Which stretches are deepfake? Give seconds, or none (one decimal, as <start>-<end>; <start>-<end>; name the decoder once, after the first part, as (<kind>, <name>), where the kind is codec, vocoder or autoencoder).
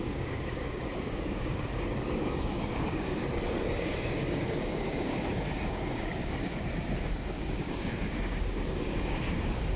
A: 0.0-3.2 (codec, DAC); 3.8-9.8